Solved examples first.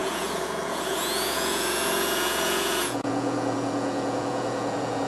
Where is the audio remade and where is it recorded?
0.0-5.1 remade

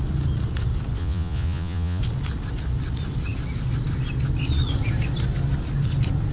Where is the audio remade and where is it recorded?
0.0-1.0 recorded; 1.0-2.0 remade; 2.0-6.3 recorded

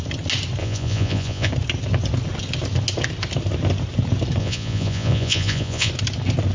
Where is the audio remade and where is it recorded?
0.0-0.6 recorded; 0.6-1.5 remade; 1.5-4.4 recorded; 4.4-5.9 remade; 5.9-6.5 recorded

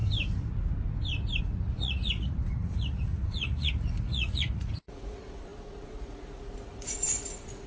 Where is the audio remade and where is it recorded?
0.0-1.4 recorded; 1.4-7.7 remade